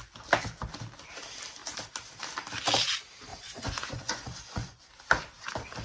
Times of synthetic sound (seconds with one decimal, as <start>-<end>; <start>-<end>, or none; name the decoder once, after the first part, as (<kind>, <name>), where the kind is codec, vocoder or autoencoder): 3.3-4.9 (vocoder, Vocos)